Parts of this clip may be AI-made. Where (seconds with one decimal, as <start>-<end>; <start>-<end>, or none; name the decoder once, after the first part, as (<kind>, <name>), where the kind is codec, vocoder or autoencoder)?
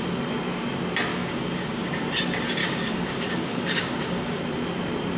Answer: 1.1-1.9 (codec, DAC); 2.6-4.4